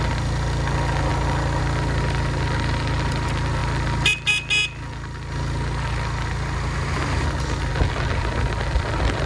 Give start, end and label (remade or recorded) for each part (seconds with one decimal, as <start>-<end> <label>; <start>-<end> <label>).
0.0-9.3 recorded